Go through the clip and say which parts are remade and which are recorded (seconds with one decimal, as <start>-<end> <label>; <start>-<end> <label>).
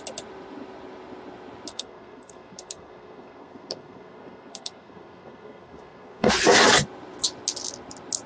0.0-1.7 recorded; 1.7-6.3 remade; 6.3-8.3 recorded